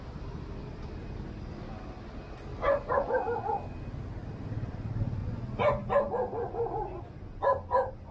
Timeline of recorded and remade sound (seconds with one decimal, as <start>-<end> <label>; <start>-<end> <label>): 0.0-2.5 recorded; 2.5-3.4 remade; 3.4-5.2 recorded; 5.2-7.0 remade; 7.0-8.1 recorded